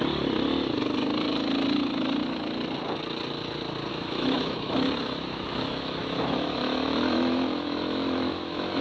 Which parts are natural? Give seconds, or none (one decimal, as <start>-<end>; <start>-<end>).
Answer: 0.0-3.9